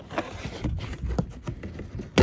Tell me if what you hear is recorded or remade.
recorded